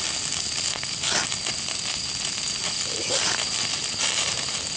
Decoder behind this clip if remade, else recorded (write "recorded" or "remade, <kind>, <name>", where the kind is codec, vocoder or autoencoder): recorded